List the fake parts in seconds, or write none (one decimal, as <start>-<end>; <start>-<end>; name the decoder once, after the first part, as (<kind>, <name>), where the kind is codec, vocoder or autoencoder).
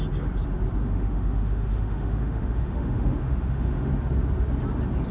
0.8-3.9 (autoencoder, DAC-VAE)